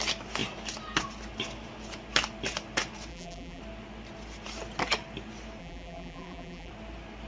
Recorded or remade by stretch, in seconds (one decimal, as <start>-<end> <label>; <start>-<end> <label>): 0.0-3.1 recorded; 3.1-3.6 remade; 3.6-5.6 recorded; 5.6-6.7 remade; 6.7-7.3 recorded